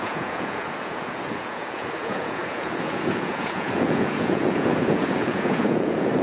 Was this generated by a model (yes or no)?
yes